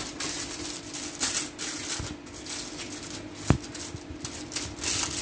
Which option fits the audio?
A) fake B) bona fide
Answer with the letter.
B